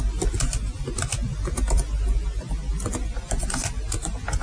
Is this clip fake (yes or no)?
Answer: no